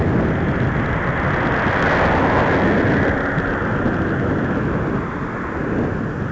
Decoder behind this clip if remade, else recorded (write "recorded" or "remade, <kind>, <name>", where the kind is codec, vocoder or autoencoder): recorded